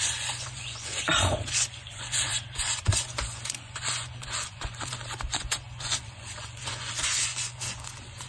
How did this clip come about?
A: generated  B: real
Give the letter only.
A